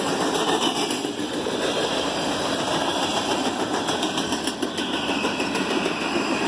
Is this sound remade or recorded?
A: recorded